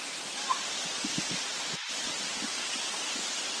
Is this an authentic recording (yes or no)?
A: yes